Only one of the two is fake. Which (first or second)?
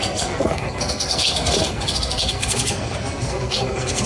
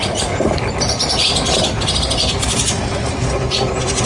first